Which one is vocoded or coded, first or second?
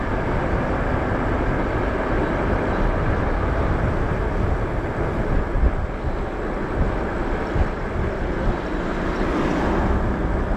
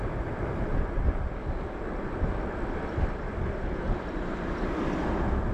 second